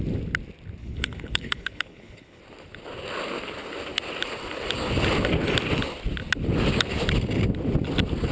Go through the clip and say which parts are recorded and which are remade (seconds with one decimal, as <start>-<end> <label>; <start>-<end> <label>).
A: 0.0-0.8 recorded; 0.8-2.4 remade; 2.4-8.3 recorded